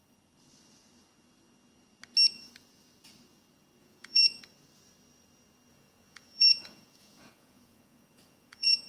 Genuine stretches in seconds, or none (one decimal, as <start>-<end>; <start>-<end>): 0.0-3.8; 4.4-5.7